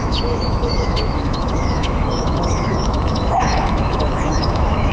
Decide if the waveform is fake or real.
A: fake